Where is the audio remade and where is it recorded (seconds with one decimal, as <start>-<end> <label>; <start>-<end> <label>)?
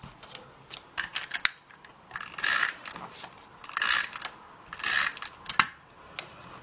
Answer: 0.0-6.6 recorded